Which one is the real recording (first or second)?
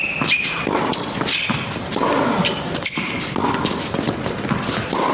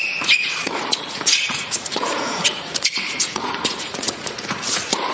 first